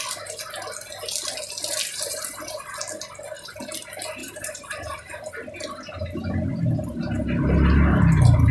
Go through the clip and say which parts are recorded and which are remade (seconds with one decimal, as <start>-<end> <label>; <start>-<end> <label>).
0.0-1.9 recorded; 1.9-2.7 remade; 2.7-4.2 recorded; 4.2-5.3 remade; 5.3-8.5 recorded